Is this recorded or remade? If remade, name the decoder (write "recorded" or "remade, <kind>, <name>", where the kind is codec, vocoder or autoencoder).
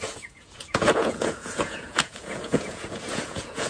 remade, vocoder, Vocos